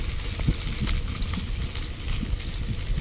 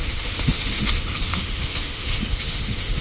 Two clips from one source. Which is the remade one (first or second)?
second